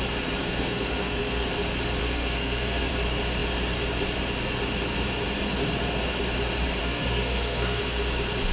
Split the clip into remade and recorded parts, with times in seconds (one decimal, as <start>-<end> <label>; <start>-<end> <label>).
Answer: 0.0-0.4 recorded; 0.4-1.5 remade; 1.5-2.0 recorded; 2.0-2.9 remade; 2.9-6.8 recorded; 6.8-7.8 remade; 7.8-8.5 recorded